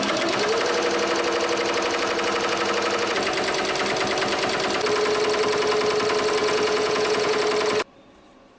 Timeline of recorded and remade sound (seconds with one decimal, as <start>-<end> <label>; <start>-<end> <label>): 0.0-6.4 recorded; 6.4-7.4 remade; 7.4-8.6 recorded